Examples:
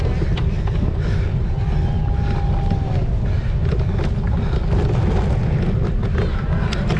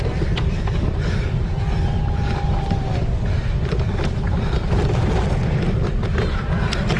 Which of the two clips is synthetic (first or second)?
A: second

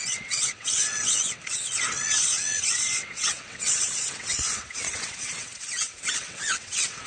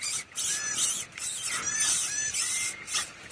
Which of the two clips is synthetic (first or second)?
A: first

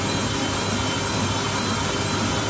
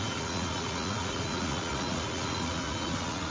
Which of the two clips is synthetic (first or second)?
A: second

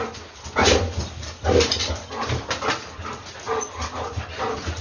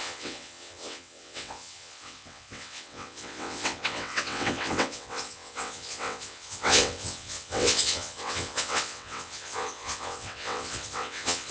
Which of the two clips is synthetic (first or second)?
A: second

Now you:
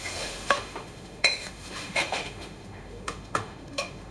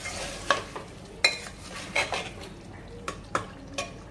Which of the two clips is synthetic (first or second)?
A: first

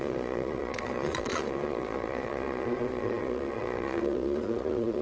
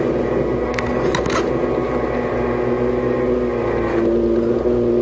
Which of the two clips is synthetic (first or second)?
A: first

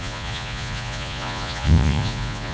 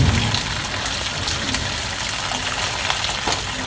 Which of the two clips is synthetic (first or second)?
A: first